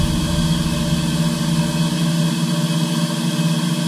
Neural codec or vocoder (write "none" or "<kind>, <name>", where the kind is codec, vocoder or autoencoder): none